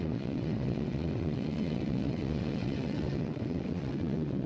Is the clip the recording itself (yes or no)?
no